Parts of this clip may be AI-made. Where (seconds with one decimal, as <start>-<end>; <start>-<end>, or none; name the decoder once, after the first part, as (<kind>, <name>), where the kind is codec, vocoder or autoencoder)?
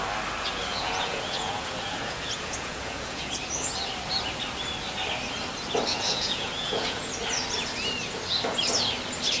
0.7-3.4 (vocoder, Vocos); 5.9-7.1